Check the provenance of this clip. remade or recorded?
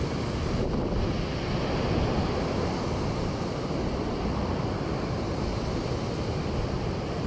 recorded